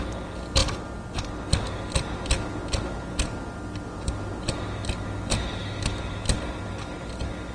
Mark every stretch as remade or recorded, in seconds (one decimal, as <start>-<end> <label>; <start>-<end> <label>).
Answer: 0.0-7.5 recorded